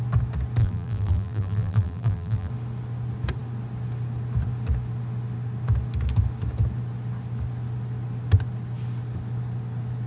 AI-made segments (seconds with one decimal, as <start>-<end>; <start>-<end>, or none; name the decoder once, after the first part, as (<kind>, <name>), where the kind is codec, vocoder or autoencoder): 0.6-2.5 (vocoder, BigVGAN v2)